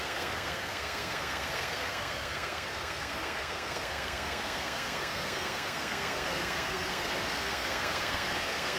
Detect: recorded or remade remade